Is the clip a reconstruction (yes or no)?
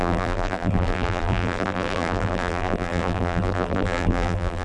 yes